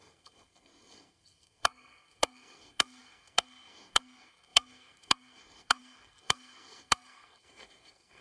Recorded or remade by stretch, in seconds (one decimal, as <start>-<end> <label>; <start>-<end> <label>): 0.0-8.2 remade